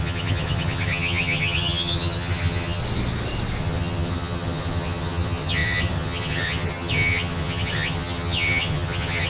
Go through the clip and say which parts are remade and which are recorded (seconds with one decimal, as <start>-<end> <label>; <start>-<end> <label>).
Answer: 0.0-2.8 remade; 2.8-3.6 recorded; 3.6-9.3 remade